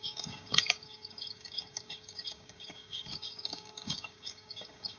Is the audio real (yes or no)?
no